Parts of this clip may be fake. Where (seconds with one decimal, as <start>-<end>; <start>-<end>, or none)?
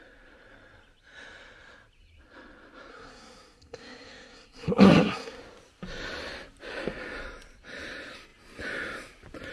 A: 2.9-5.4